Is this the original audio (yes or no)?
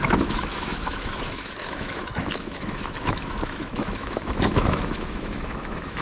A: no